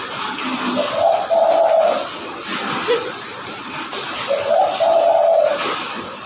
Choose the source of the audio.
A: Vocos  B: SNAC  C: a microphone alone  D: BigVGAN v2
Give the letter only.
D